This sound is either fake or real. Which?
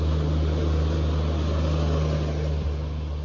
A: real